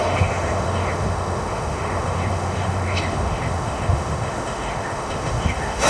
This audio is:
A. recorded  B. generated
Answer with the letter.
B